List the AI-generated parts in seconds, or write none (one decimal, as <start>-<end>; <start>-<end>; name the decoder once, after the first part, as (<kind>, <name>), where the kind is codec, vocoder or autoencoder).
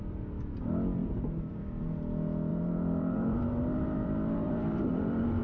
1.0-1.6 (vocoder, BigVGAN v2); 2.5-5.4